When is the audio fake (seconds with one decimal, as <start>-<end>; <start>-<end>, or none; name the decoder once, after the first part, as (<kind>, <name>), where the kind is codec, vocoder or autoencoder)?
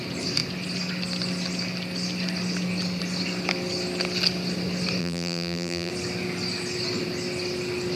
5.0-5.9 (vocoder, BigVGAN v2)